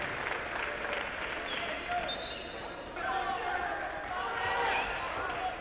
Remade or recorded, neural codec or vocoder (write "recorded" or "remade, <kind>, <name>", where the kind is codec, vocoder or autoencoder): recorded